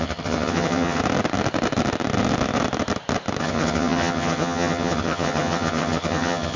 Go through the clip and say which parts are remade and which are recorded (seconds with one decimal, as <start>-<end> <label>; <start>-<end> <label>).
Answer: 0.0-1.0 remade; 1.0-3.4 recorded; 3.4-6.6 remade